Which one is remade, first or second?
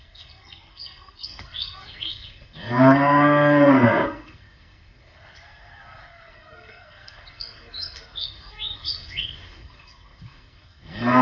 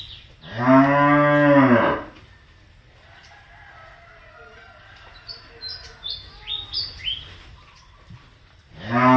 first